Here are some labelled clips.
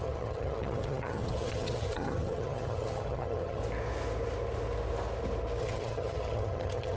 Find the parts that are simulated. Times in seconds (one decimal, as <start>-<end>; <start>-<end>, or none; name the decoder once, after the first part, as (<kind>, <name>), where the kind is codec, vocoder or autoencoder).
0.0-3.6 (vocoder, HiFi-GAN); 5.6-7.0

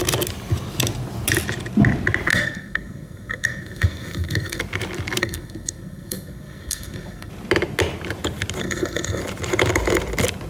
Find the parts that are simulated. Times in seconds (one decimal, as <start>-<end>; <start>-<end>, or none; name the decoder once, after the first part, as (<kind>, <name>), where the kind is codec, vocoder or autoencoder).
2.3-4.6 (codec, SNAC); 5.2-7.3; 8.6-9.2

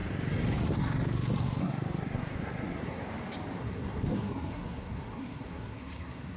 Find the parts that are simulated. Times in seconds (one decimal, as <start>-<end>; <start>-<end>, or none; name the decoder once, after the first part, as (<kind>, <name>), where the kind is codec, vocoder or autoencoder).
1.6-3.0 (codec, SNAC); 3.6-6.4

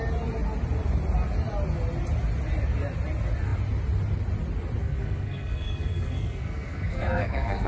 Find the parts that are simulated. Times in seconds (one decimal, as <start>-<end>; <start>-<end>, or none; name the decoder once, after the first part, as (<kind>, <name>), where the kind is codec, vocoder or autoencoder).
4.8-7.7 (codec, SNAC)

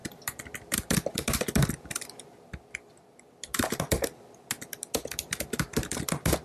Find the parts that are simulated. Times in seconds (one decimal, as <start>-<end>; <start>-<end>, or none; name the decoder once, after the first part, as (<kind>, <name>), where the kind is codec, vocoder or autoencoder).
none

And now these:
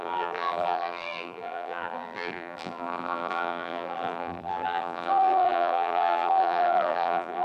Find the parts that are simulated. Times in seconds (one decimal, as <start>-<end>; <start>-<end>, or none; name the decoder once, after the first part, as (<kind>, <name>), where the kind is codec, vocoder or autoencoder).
0.0-7.4 (vocoder, BigVGAN v2)

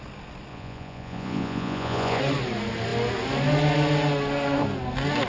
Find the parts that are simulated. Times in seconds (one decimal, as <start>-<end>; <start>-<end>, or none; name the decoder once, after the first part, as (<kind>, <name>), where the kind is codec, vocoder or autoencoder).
0.5-2.2 (vocoder, Vocos)